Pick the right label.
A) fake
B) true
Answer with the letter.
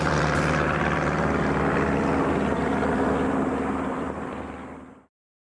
A